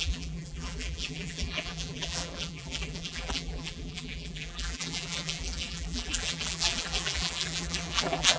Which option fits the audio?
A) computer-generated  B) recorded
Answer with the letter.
A